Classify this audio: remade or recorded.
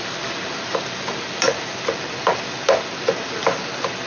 recorded